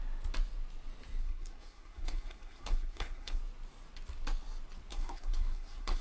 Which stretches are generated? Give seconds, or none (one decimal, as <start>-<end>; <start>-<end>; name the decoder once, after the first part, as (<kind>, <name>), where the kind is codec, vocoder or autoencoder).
1.2-3.4 (codec, SNAC); 4.9-6.0